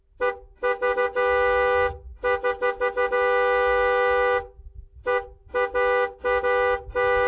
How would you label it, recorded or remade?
recorded